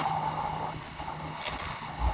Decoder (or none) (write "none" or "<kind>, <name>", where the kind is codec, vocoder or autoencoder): codec, HILCodec